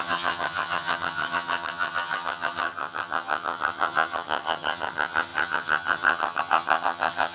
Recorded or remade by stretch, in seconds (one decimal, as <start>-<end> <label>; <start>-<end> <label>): 0.0-7.3 remade